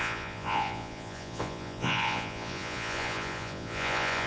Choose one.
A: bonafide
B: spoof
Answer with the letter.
B